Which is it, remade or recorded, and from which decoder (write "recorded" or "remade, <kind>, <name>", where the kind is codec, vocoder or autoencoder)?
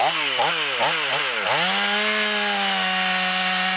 recorded